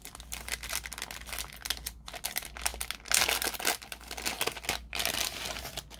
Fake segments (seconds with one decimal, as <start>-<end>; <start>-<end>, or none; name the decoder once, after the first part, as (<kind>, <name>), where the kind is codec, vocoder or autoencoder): none